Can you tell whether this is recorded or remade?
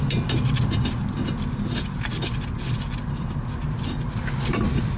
recorded